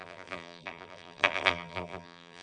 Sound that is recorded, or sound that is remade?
remade